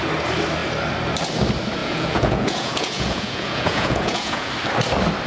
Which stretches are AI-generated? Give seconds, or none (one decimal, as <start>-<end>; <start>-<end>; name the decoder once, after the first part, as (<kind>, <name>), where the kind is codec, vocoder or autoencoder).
1.8-4.5 (vocoder, Vocos)